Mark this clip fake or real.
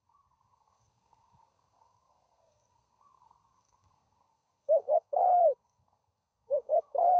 fake